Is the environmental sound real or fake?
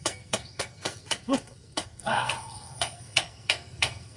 fake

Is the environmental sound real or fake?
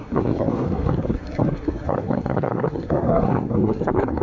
fake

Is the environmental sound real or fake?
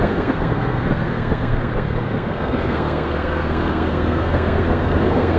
fake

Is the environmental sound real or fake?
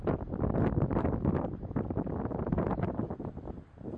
real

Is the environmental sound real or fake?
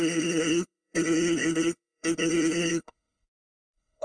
fake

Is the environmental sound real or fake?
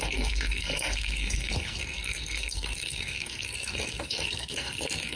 fake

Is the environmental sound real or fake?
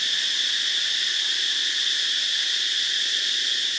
real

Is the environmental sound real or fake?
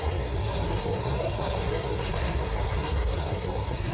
fake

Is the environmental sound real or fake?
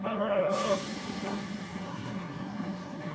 fake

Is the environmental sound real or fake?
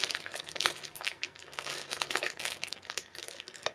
fake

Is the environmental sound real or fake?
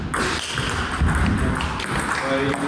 real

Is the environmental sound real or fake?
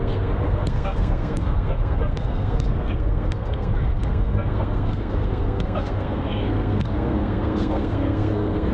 fake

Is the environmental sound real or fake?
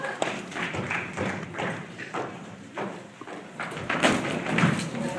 real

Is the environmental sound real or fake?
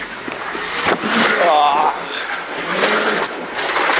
real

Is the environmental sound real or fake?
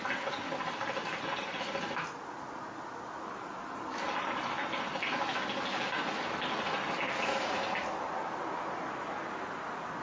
real